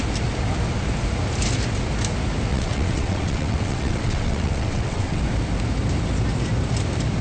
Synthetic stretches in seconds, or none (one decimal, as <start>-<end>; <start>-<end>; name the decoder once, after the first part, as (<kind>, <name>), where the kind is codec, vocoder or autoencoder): 2.5-5.2 (vocoder, WaveNeXt)